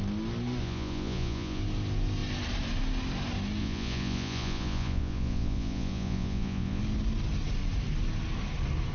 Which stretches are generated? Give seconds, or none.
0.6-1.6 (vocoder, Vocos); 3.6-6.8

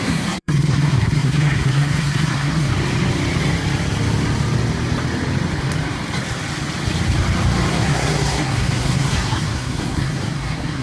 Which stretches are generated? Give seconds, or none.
0.0-2.7 (codec, SNAC); 7.7-10.8